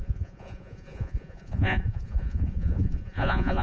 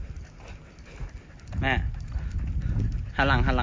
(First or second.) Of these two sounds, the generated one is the first